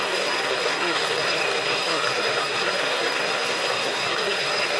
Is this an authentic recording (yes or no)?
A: no